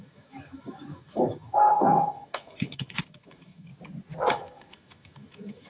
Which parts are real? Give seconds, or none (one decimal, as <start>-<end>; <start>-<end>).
3.7-4.3

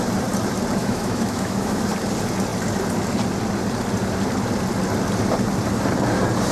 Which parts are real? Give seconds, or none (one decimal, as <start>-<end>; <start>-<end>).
0.0-0.8; 1.8-6.5

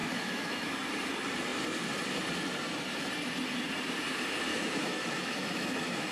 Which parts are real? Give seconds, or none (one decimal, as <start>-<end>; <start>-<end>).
0.7-4.5

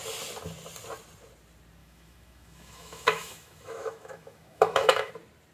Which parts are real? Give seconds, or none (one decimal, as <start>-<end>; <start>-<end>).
0.0-1.8; 5.1-5.5

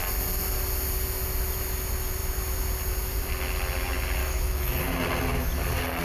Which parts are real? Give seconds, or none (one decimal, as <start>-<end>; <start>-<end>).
0.0-4.2; 4.8-6.0

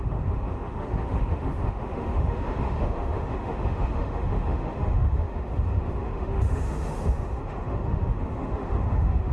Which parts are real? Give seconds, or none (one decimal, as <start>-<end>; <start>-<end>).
none

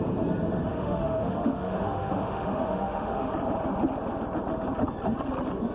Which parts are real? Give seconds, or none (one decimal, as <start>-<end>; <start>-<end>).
0.0-0.7; 3.3-5.7